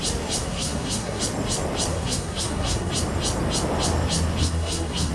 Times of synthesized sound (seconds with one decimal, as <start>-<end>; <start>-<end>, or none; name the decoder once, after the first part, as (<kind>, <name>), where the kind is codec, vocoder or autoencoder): 0.4-1.2 (codec, SNAC); 1.9-2.9; 4.4-5.1